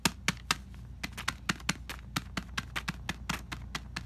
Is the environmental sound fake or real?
real